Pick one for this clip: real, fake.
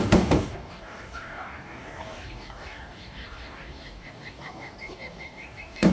fake